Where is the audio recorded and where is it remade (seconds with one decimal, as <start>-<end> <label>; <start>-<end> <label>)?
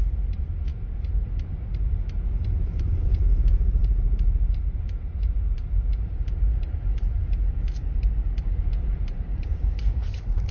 0.0-10.5 remade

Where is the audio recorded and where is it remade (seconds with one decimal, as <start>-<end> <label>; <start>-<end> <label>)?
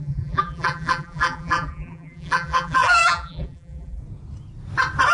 0.0-4.0 remade; 4.0-5.1 recorded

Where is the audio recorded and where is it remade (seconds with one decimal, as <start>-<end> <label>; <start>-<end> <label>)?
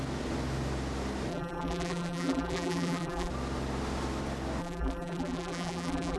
0.0-1.3 recorded; 1.3-3.3 remade; 3.3-4.6 recorded; 4.6-6.2 remade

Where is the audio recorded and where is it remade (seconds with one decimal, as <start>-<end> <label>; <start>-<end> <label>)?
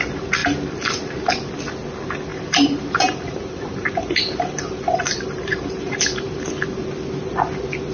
0.0-2.3 recorded; 2.3-6.5 remade; 6.5-7.9 recorded